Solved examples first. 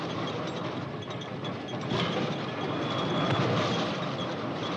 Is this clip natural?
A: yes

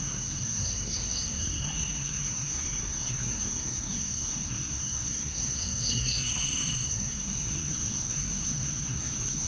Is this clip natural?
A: no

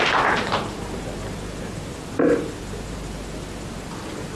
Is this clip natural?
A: yes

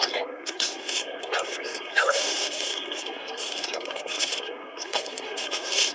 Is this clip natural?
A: no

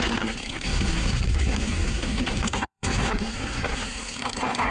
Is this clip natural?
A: no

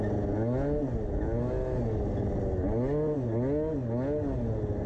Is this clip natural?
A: yes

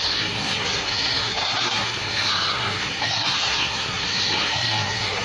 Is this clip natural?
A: no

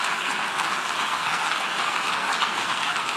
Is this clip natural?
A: no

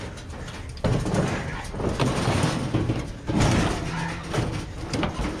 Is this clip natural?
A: yes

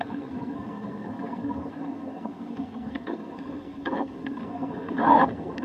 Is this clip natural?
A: no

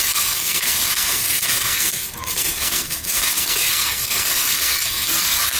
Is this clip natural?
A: no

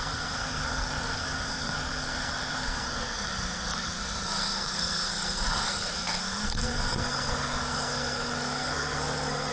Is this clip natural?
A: no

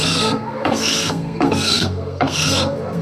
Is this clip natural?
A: no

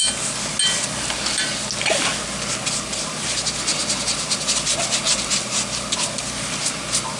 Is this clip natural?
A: yes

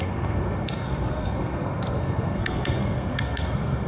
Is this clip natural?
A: no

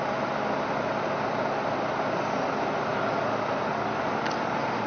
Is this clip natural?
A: yes